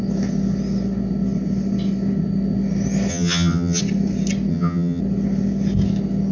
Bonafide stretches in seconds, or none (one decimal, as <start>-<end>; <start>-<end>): 0.0-3.1; 3.8-4.5; 5.0-6.3